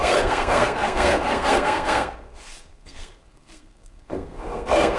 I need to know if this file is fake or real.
fake